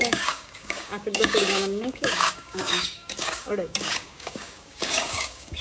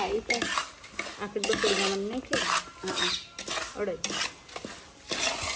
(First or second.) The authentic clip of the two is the second